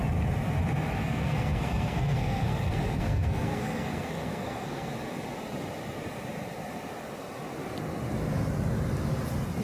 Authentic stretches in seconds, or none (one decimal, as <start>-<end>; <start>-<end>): 0.0-1.0; 4.9-9.6